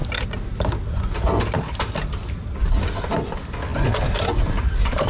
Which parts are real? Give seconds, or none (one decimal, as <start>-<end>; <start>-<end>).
0.0-5.1